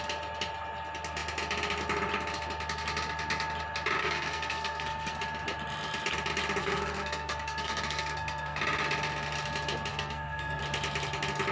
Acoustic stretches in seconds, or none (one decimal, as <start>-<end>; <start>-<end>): 0.0-4.0; 5.2-6.6; 8.6-9.9; 10.6-11.5